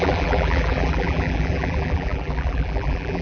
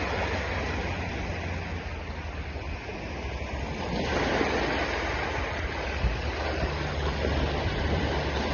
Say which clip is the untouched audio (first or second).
second